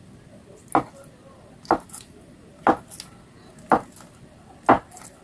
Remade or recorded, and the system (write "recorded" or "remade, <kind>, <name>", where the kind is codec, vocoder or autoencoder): recorded